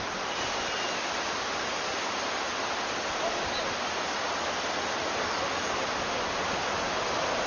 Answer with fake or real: real